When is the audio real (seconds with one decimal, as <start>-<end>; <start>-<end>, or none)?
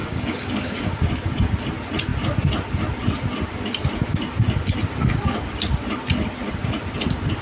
0.9-7.4